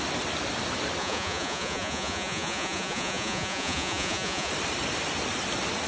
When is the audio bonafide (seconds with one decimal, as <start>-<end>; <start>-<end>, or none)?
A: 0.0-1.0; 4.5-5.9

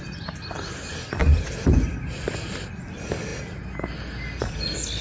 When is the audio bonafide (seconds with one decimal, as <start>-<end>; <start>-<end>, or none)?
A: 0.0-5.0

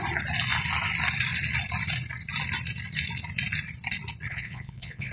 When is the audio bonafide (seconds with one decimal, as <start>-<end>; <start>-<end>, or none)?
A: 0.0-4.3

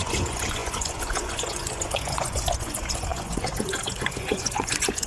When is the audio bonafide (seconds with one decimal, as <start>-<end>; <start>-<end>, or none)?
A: none

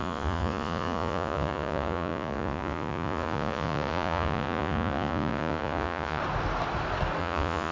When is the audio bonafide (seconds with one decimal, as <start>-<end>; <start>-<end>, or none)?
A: 6.2-7.2

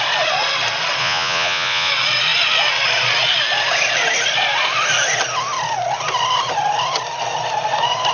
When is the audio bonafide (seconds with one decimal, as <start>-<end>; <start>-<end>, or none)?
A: 0.0-1.0; 1.9-8.1

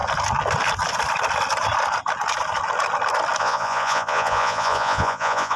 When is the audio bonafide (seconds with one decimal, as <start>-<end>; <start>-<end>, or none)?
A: 0.0-3.4

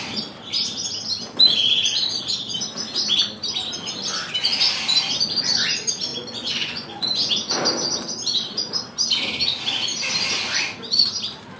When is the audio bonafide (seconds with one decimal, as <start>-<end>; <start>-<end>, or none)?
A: 0.0-6.1; 7.3-11.6